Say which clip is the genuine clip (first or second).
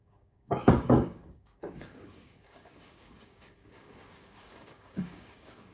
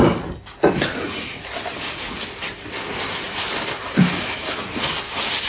second